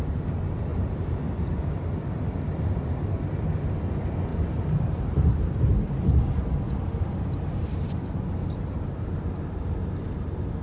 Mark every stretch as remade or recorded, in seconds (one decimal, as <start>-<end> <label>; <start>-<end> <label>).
0.0-0.7 recorded; 0.7-3.1 remade; 3.1-4.3 recorded; 4.3-8.2 remade; 8.2-10.6 recorded